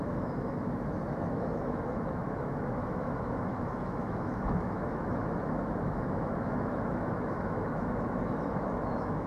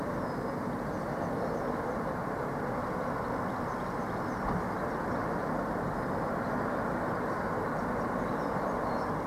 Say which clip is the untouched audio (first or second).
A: second